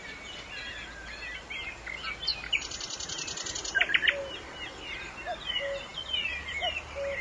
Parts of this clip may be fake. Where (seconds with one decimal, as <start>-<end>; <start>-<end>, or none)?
none